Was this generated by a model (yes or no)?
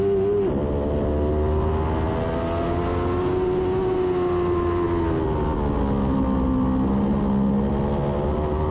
no